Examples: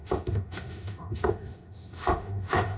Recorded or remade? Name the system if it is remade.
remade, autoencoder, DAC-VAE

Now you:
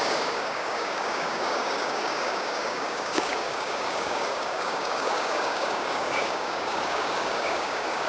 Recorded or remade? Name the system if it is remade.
remade, codec, DAC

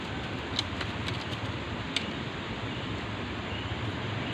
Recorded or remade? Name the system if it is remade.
recorded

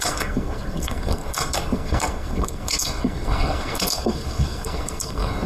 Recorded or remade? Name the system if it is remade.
remade, codec, SNAC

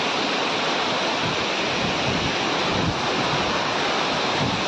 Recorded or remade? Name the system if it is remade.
recorded